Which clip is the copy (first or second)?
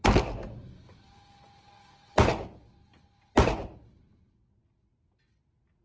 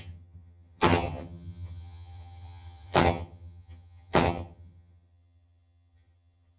second